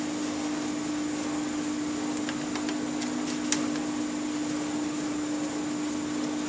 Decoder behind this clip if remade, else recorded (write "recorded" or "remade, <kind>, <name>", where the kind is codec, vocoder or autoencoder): recorded